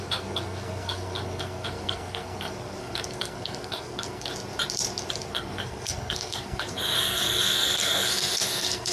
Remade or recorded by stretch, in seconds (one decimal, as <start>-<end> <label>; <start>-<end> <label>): 0.0-4.3 remade; 4.3-5.1 recorded; 5.1-8.9 remade